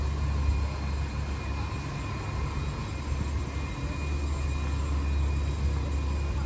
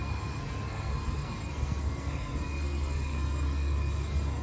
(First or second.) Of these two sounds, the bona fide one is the first